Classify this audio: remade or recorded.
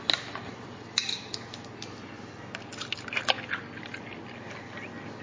recorded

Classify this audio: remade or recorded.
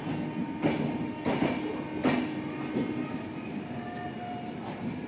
recorded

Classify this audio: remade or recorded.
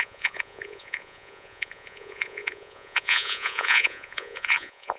remade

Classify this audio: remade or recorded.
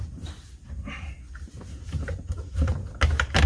recorded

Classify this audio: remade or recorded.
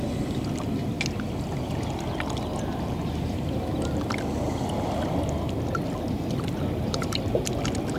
recorded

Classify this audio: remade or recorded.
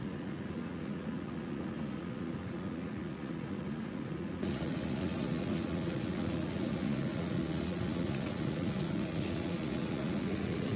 remade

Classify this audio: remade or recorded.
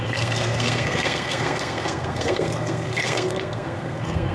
remade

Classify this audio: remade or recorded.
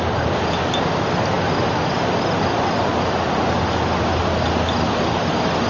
recorded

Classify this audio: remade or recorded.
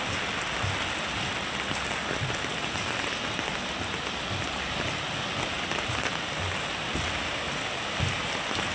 recorded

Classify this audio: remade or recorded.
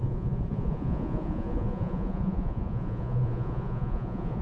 remade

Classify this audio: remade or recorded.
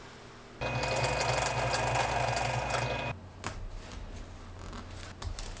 recorded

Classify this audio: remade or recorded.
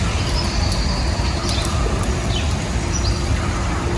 recorded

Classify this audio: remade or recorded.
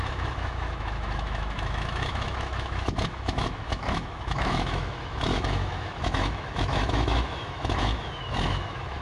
remade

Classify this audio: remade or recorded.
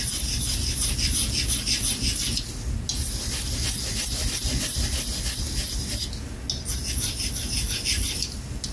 recorded